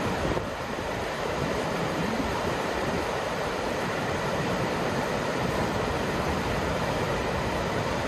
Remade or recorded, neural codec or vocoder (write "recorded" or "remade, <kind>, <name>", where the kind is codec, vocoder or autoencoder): remade, vocoder, BigVGAN v2